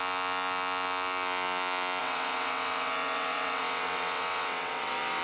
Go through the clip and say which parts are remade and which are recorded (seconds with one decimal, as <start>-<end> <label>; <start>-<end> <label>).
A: 0.0-2.0 recorded; 2.0-5.2 remade